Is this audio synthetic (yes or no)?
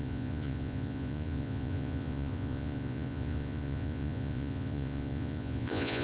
yes